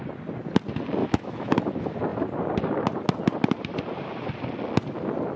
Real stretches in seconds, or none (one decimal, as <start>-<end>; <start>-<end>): 0.0-1.0; 1.6-5.4